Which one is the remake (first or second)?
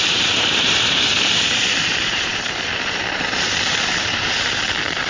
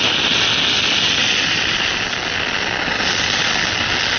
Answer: first